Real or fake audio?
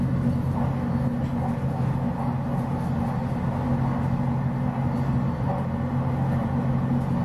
real